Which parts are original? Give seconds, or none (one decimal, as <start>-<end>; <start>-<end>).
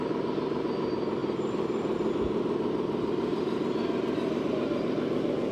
0.0-1.2; 4.5-5.5